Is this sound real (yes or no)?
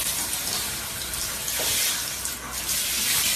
yes